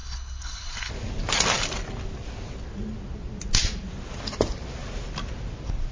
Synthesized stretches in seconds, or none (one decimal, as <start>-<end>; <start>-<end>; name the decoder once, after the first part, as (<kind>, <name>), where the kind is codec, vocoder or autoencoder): 0.0-0.9 (codec, HILCodec)